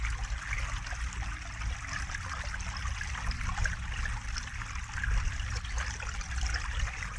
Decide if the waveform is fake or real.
real